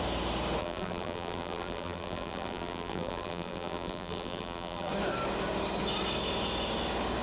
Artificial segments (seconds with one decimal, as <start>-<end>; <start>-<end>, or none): 0.6-4.9